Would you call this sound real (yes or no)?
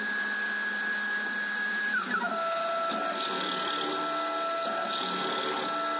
yes